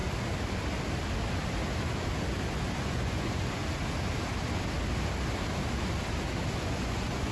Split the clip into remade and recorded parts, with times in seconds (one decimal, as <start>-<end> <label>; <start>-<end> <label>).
0.0-2.8 recorded; 2.8-3.6 remade; 3.6-6.6 recorded; 6.6-7.3 remade